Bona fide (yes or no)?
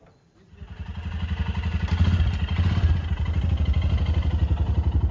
yes